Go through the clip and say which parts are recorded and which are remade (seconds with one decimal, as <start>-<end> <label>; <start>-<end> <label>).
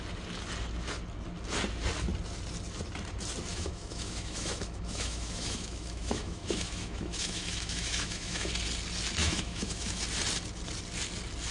0.0-3.5 recorded; 3.5-8.5 remade; 8.5-9.2 recorded; 9.2-10.0 remade; 10.0-11.5 recorded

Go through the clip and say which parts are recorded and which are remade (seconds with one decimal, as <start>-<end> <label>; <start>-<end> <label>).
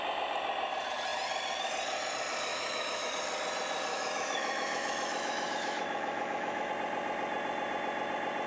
0.0-2.5 recorded; 2.5-3.1 remade; 3.1-3.9 recorded; 3.9-6.7 remade; 6.7-8.5 recorded